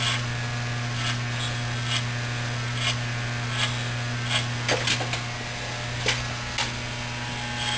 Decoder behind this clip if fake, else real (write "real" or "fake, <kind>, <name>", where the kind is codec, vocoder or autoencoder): real